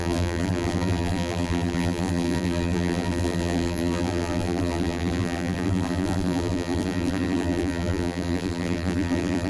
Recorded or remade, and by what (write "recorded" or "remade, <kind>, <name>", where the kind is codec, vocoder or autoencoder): remade, vocoder, BigVGAN v2